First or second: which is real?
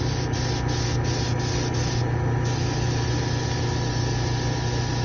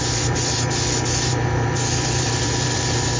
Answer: first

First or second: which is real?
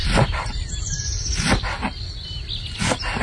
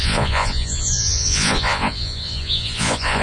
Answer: first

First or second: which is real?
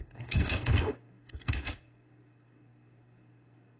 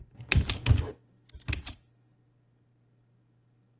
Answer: second